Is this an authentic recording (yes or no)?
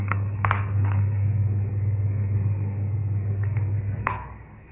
no